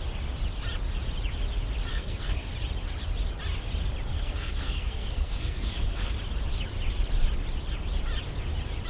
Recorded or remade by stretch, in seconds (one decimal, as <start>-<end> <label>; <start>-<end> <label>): 0.0-1.9 recorded; 1.9-2.5 remade; 2.5-4.1 recorded; 4.1-6.1 remade; 6.1-8.9 recorded

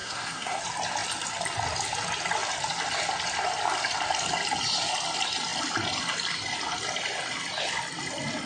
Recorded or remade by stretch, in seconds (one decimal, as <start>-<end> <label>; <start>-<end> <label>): 0.0-0.6 remade; 0.6-8.5 recorded

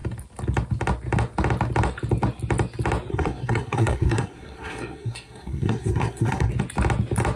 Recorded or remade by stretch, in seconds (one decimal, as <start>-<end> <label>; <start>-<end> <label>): 0.0-3.1 recorded; 3.1-6.5 remade; 6.5-7.4 recorded

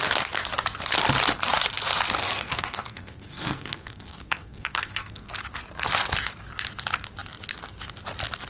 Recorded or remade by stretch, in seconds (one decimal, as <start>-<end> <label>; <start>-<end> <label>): 0.0-2.2 recorded; 2.2-5.3 remade; 5.3-8.5 recorded